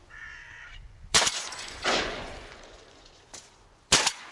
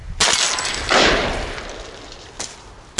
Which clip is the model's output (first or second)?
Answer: first